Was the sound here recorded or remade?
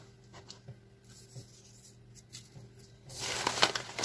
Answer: recorded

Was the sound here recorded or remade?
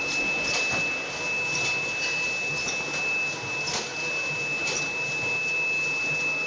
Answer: recorded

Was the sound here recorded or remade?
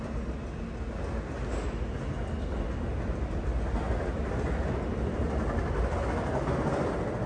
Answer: recorded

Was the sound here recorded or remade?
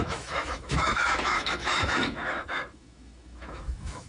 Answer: remade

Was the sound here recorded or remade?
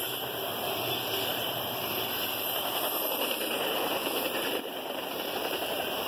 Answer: remade